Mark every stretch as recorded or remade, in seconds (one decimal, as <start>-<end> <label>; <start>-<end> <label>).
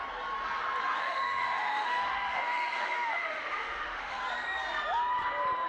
0.0-1.0 recorded; 1.0-4.2 remade; 4.2-5.7 recorded